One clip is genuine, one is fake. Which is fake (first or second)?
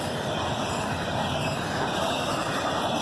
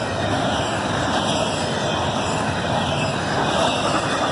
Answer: first